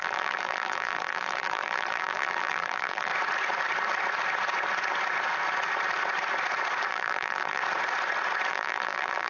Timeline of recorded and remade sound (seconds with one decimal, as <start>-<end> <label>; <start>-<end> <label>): 0.0-3.1 remade; 3.1-6.9 recorded; 6.9-7.6 remade; 7.6-8.5 recorded; 8.5-9.3 remade